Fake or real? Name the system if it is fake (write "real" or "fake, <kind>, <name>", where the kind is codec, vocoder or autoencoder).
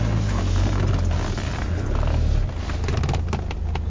real